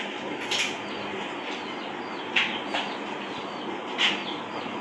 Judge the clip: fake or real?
real